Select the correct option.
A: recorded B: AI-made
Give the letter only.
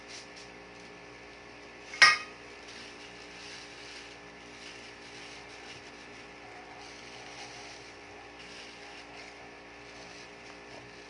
A